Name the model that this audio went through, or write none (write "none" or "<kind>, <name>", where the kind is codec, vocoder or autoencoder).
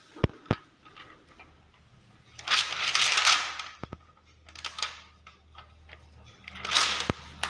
none